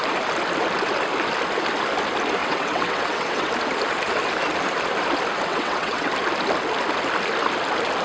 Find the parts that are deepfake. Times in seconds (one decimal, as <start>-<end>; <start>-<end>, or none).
2.4-3.5; 5.5-6.1